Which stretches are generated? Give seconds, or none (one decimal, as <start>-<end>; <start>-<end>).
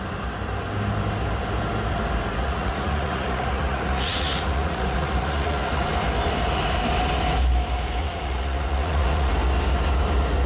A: 2.3-5.9; 8.0-9.3